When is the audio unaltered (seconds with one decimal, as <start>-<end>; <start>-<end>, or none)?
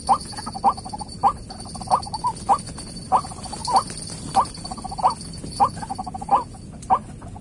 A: 0.0-7.4